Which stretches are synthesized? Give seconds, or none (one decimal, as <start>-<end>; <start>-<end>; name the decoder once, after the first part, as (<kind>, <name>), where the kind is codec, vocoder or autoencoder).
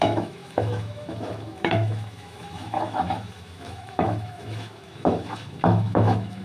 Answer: 0.0-6.4 (autoencoder, DAC-VAE)